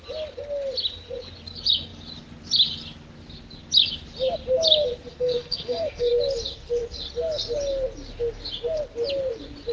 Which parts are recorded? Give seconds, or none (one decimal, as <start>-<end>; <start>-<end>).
0.0-5.1; 6.1-9.7